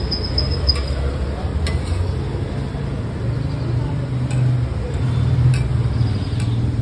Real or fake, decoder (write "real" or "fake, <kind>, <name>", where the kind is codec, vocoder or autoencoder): real